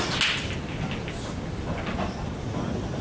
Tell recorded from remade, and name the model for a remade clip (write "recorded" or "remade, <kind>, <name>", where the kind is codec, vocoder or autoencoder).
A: recorded